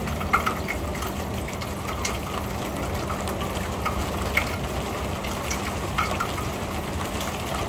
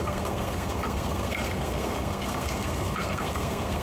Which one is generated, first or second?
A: second